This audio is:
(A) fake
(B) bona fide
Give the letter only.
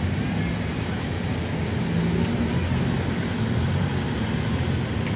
B